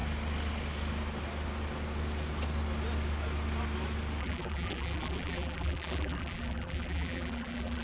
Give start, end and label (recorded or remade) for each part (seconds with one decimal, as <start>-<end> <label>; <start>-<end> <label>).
0.0-4.2 recorded; 4.2-7.8 remade